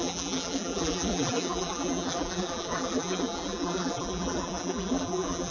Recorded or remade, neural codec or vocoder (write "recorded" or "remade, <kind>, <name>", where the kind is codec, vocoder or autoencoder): remade, vocoder, BigVGAN v2